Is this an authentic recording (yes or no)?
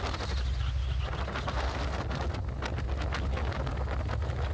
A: yes